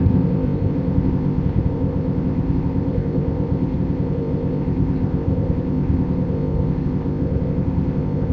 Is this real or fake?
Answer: fake